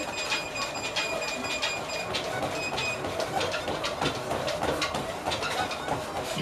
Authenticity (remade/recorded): recorded